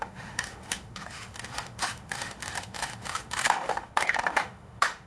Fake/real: fake